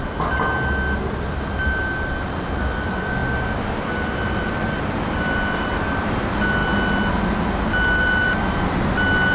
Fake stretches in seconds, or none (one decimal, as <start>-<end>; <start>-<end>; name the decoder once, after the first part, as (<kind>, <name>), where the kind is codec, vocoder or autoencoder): none